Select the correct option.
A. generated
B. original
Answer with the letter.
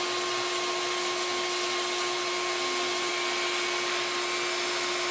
B